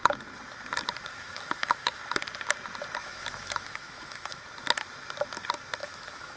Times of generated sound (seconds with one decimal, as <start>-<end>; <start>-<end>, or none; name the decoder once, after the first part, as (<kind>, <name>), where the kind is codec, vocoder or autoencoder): 1.1-2.0 (autoencoder, DAC-VAE); 3.0-4.4; 5.8-6.4